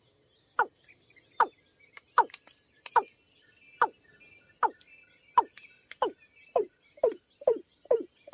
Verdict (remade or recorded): recorded